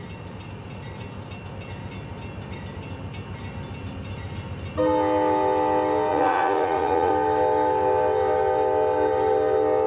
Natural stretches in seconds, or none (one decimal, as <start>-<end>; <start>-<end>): 0.0-6.1; 7.1-9.9